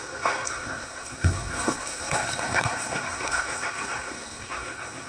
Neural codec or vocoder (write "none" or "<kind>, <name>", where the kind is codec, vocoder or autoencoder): codec, SNAC